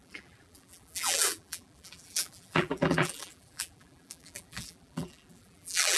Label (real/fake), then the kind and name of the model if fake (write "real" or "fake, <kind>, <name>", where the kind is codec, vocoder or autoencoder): fake, vocoder, BigVGAN v2